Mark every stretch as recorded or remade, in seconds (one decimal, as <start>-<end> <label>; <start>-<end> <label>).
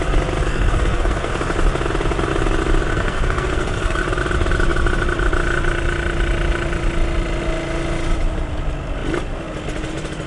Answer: 0.0-0.5 recorded; 0.5-1.3 remade; 1.3-2.9 recorded; 2.9-4.0 remade; 4.0-10.3 recorded